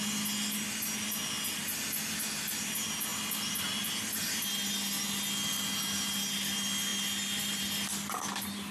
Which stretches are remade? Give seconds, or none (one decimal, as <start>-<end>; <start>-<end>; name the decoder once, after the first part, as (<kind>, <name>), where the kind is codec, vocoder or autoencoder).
none